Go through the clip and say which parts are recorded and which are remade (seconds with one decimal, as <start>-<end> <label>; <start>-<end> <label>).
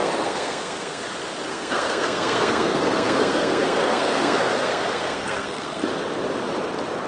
0.0-1.0 remade; 1.0-1.5 recorded; 1.5-5.8 remade; 5.8-7.1 recorded